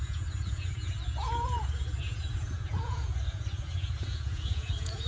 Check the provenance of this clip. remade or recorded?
remade